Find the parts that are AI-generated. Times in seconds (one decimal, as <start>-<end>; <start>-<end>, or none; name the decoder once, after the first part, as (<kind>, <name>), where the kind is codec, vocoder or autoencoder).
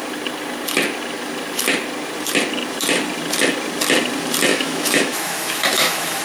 4.5-6.2 (autoencoder, DAC-VAE)